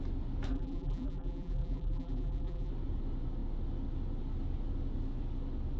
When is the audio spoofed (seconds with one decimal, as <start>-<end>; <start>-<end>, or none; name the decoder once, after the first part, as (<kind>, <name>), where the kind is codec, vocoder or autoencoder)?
0.5-2.7 (vocoder, BigVGAN v2)